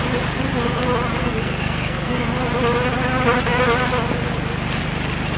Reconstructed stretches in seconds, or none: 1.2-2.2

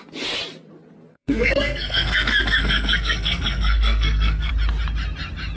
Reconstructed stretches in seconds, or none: 1.1-4.5